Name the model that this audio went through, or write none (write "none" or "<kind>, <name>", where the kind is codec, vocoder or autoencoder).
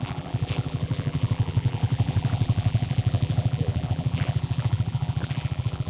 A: vocoder, BigVGAN v2